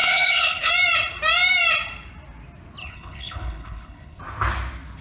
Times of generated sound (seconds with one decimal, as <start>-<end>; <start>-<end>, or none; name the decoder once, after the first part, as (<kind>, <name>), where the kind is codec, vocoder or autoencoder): 0.0-0.7 (codec, HILCodec); 2.8-4.2